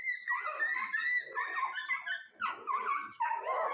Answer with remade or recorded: recorded